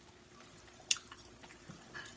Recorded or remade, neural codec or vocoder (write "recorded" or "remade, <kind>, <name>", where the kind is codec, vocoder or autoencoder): recorded